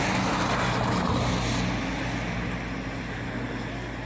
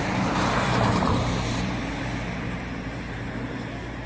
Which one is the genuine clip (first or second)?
first